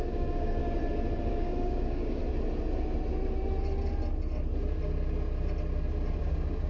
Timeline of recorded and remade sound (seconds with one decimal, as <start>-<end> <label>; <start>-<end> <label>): 0.0-0.6 remade; 0.6-1.3 recorded; 1.3-2.2 remade; 2.2-6.2 recorded; 6.2-6.7 remade